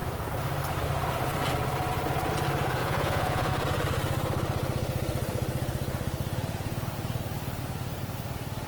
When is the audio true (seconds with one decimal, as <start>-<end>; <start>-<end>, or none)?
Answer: 0.0-2.8; 3.5-8.7